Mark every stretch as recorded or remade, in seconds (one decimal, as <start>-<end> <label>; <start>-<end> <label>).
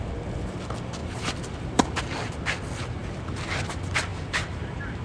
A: 0.0-1.0 recorded; 1.0-2.3 remade; 2.3-3.0 recorded; 3.0-3.6 remade; 3.6-4.1 recorded; 4.1-5.0 remade